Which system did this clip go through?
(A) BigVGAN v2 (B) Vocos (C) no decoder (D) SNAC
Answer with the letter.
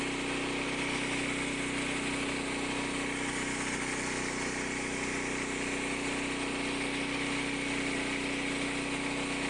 C